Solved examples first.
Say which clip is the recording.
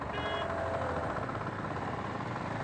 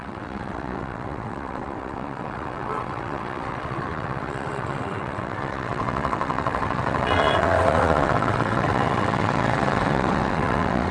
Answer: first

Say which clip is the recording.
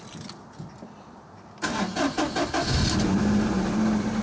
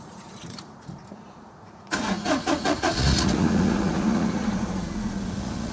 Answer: first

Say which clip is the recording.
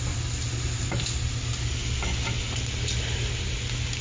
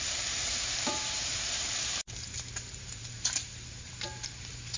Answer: first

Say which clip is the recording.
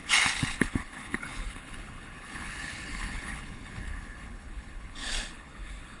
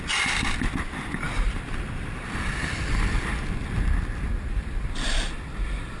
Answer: second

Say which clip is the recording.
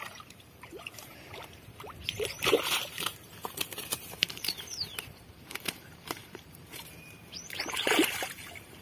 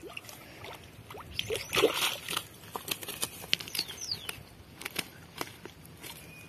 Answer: second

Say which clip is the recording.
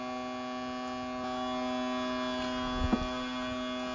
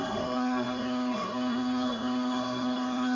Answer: first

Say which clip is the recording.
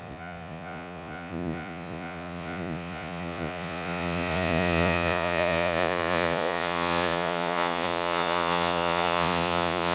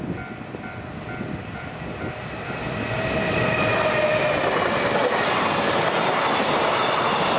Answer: second